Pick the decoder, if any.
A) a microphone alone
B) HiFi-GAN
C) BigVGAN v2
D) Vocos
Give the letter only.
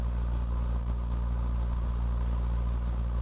A